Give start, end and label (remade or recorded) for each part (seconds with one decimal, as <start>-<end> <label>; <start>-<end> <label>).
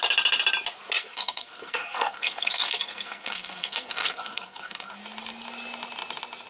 0.0-1.0 recorded; 1.0-4.9 remade; 4.9-6.5 recorded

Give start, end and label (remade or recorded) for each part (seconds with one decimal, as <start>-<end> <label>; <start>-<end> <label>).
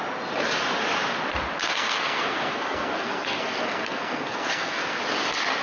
0.0-1.6 recorded; 1.6-5.0 remade; 5.0-5.6 recorded